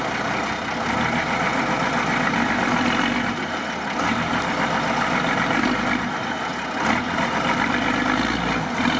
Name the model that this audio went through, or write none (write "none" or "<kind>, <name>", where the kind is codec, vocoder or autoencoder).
none